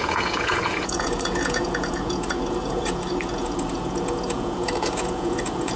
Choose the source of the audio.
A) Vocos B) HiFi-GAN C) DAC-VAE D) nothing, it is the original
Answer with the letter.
A